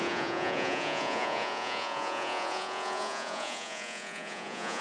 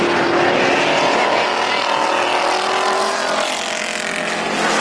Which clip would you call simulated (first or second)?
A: first